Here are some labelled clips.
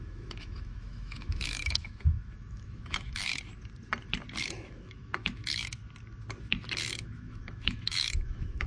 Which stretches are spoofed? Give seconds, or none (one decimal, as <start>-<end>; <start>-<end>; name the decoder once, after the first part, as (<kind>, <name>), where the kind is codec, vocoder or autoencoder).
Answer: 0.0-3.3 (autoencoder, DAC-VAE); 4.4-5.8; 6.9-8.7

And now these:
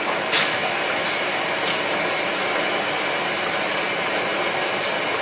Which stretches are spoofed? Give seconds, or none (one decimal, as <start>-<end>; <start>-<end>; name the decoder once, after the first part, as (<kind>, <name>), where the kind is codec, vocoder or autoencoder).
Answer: none

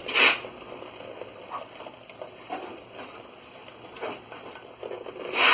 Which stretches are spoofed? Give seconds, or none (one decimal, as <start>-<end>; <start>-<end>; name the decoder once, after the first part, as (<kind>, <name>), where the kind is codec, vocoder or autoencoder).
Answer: none

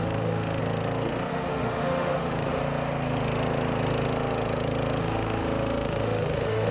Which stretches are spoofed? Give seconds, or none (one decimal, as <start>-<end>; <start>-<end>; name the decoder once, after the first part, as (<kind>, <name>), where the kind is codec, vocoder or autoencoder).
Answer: 0.0-0.6 (autoencoder, DAC-VAE); 1.3-2.6; 5.0-6.7

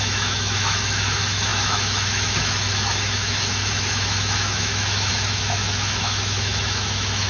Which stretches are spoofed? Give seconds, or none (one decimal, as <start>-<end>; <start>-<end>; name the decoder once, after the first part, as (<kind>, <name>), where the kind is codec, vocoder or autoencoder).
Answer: 0.0-7.3 (autoencoder, DAC-VAE)

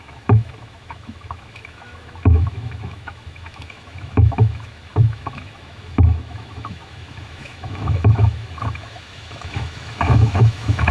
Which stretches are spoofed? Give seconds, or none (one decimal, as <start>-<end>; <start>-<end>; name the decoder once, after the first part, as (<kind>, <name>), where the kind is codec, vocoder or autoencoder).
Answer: 0.0-10.9 (autoencoder, DAC-VAE)

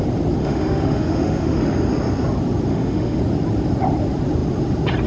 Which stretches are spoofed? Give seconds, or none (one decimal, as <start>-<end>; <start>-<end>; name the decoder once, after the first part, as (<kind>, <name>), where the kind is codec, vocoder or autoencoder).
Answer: 0.4-1.6 (autoencoder, DAC-VAE); 2.7-3.2